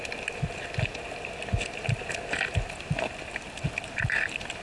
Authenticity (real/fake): real